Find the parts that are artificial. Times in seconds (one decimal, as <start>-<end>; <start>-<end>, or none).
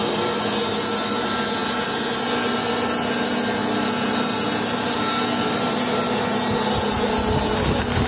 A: none